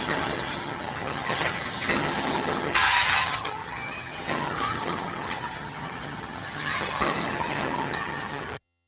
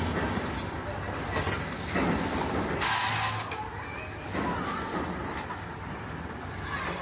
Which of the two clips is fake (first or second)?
first